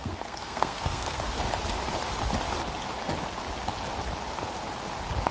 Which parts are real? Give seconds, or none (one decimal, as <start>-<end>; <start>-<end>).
1.4-5.3